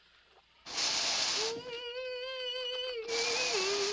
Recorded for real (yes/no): yes